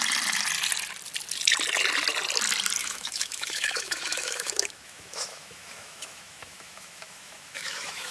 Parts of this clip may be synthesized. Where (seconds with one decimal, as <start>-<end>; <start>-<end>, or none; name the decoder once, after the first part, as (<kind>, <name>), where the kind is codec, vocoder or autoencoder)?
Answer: 2.8-8.1 (autoencoder, DAC-VAE)